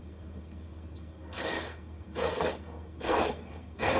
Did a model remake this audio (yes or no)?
yes